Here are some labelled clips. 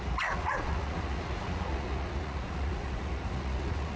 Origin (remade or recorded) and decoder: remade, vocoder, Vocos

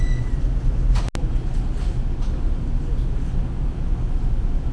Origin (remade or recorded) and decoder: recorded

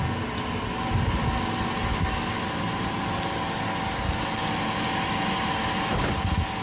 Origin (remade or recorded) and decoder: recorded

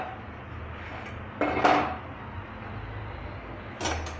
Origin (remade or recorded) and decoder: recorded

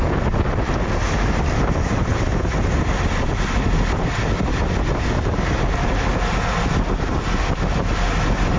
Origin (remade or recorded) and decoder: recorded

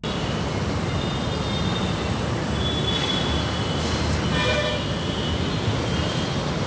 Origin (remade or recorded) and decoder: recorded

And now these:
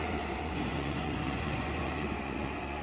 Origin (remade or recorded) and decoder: remade, vocoder, Vocos